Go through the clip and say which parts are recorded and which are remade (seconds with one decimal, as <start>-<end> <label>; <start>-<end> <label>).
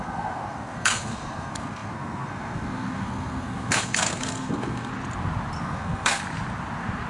0.0-4.9 remade; 4.9-5.6 recorded; 5.6-6.2 remade; 6.2-7.1 recorded